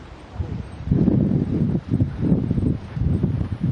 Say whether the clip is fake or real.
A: fake